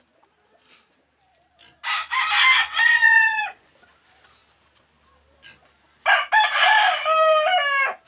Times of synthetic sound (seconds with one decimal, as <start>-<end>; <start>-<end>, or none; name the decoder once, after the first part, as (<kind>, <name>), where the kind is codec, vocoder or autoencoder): 2.6-3.7 (vocoder, Vocos)